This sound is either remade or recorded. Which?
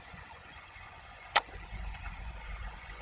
remade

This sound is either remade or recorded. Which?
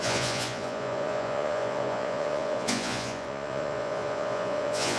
remade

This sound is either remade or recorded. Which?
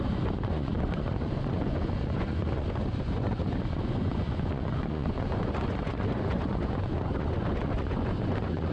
remade